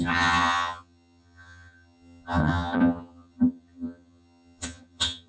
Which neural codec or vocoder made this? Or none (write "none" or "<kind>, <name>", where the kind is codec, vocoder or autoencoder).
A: vocoder, HiFi-GAN